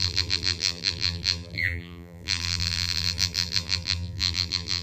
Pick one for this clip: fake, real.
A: fake